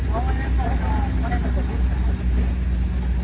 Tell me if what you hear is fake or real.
real